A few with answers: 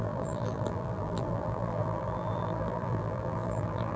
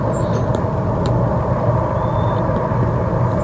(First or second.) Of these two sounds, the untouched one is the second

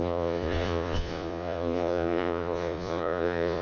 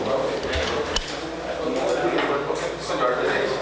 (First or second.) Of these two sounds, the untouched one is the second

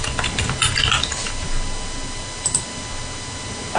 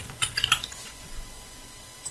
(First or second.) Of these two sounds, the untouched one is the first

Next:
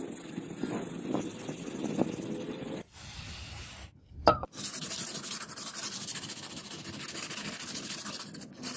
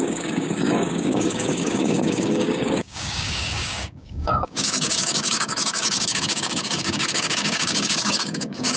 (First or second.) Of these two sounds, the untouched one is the first